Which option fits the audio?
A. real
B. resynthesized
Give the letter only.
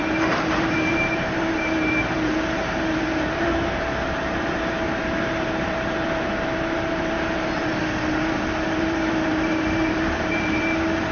B